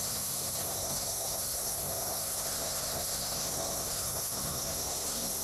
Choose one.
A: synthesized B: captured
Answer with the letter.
A